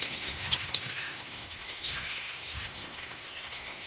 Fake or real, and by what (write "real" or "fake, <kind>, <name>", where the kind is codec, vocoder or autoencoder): fake, codec, SNAC